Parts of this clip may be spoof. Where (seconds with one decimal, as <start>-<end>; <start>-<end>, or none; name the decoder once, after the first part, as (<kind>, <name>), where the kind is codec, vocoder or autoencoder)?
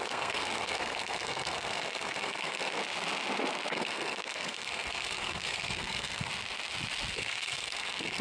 0.0-2.8 (codec, SNAC); 3.7-6.3; 7.1-8.2